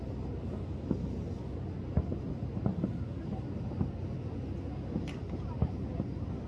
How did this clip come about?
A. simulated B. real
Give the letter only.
B